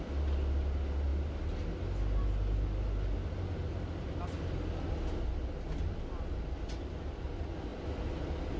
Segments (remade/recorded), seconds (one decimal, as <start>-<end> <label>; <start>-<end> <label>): 0.0-8.6 recorded